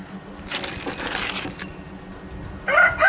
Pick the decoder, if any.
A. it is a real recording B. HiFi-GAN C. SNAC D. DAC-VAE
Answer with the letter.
A